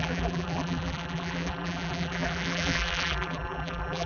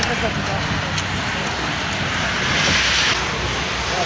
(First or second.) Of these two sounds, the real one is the second